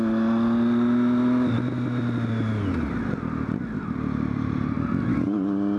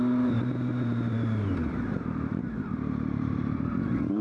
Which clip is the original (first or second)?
first